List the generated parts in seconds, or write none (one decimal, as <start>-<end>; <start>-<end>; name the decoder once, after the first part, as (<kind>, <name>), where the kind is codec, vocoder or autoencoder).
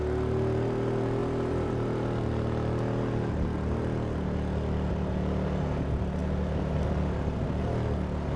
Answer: none